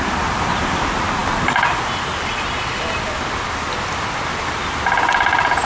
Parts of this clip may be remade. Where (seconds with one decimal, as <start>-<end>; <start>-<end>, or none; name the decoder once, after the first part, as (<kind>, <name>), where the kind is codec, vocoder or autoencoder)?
none